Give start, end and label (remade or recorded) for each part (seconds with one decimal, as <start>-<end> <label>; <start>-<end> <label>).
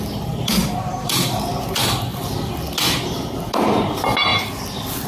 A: 0.0-5.1 recorded